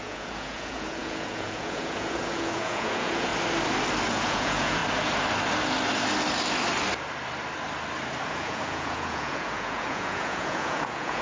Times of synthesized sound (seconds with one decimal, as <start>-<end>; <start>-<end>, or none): 0.0-3.3; 4.1-4.8; 8.3-11.2